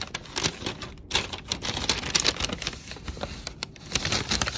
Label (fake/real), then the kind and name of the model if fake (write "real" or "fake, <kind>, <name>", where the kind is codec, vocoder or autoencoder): real